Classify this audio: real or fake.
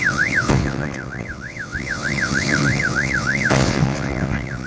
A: fake